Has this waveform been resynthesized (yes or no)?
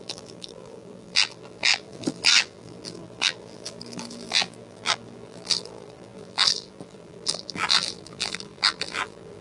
yes